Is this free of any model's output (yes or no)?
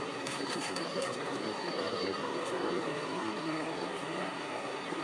no